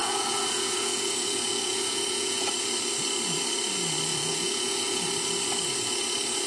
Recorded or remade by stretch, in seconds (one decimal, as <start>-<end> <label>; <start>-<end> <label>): 0.0-2.5 remade; 2.5-4.1 recorded; 4.1-5.1 remade; 5.1-6.5 recorded